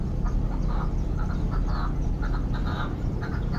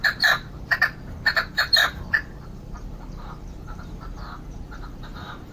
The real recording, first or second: first